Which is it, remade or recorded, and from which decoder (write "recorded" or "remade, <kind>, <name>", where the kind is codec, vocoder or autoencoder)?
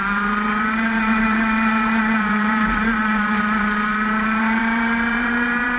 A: remade, vocoder, BigVGAN v2